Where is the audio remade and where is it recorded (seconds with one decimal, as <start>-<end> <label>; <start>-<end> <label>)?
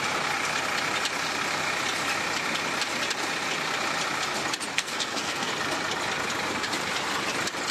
0.0-4.7 recorded; 4.7-5.5 remade; 5.5-7.7 recorded